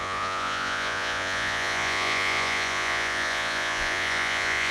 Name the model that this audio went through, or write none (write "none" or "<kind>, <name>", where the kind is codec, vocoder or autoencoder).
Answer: vocoder, Vocos